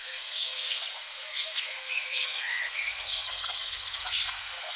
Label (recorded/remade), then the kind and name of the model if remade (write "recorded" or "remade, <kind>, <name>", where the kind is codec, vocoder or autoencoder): remade, codec, SNAC